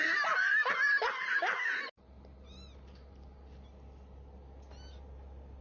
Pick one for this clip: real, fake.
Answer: real